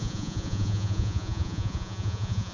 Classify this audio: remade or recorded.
remade